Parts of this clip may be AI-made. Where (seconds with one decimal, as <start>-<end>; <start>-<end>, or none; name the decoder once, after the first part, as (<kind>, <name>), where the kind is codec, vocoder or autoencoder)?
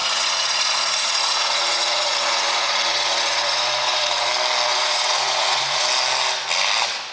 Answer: 0.0-4.3 (vocoder, Vocos); 4.7-5.9